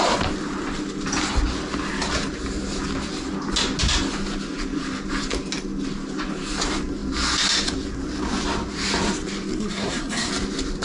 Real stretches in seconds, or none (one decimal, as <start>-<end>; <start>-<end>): 0.0-9.5; 10.3-10.8

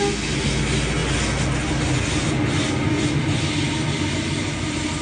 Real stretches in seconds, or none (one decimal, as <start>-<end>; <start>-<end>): 0.0-5.0

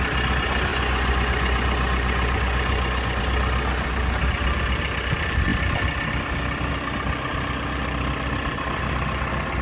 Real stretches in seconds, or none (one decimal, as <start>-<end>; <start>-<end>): 0.0-0.7; 3.2-9.6

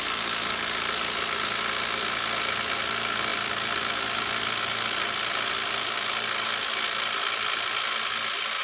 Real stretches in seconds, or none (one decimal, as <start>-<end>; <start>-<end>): 0.0-8.6

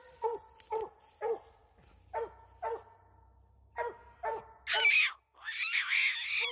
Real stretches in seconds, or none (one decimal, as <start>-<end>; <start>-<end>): 0.0-6.5

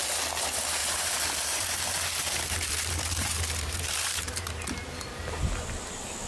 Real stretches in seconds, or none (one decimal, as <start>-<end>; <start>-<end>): 0.0-0.8; 4.6-6.3

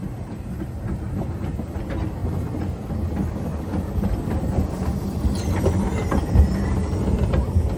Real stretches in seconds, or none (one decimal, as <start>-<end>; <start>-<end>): 1.8-2.2; 2.9-7.8

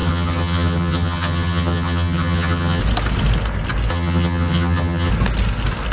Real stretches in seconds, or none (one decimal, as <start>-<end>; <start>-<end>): 2.8-3.9; 5.1-5.9